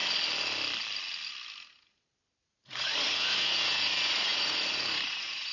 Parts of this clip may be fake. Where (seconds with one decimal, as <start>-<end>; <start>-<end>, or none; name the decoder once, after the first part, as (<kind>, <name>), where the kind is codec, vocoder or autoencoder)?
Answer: 2.4-5.5 (vocoder, Vocos)